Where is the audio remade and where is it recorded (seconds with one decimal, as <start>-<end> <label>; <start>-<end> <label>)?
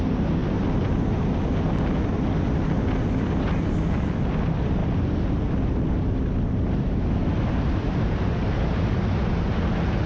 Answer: 0.0-10.1 recorded